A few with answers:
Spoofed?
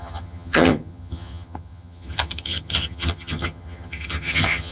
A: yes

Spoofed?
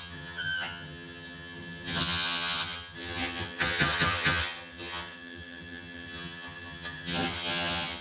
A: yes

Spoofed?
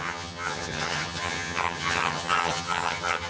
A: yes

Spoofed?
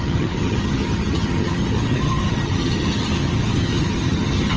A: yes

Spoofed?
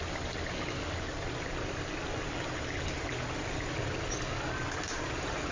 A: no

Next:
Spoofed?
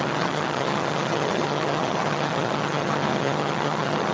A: yes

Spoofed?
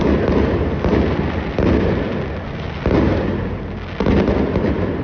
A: no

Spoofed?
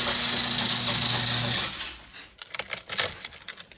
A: no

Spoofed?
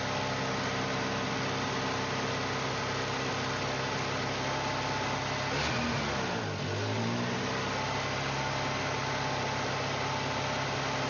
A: no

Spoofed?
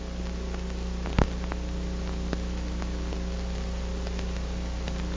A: no